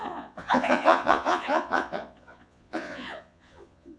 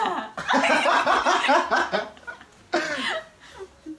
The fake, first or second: first